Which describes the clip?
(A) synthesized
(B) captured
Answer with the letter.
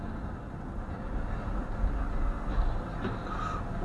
B